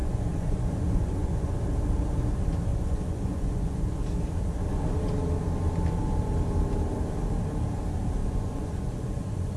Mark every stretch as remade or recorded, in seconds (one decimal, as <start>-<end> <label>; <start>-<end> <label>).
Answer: 0.0-1.6 remade; 1.6-2.7 recorded; 2.7-3.8 remade; 3.8-8.2 recorded; 8.2-9.6 remade